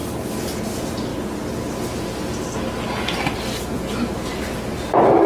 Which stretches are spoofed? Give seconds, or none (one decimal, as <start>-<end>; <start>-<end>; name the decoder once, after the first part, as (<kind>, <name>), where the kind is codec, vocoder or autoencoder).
none